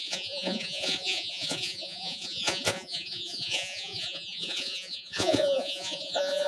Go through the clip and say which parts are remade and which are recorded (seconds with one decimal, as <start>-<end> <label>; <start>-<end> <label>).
0.0-6.5 remade